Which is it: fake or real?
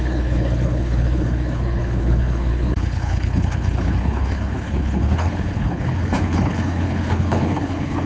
fake